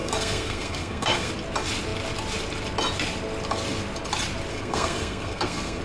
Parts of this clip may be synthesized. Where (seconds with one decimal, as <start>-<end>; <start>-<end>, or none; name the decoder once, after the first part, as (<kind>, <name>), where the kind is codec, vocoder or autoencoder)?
0.0-1.3 (codec, SNAC); 4.5-5.8